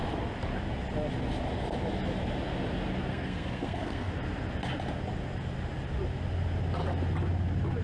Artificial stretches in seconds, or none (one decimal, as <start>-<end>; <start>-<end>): 3.1-4.1